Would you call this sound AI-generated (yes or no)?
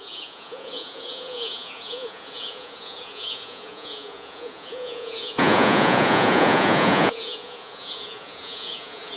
yes